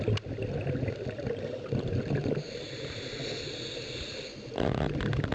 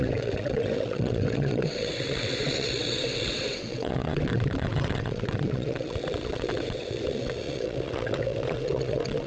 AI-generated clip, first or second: second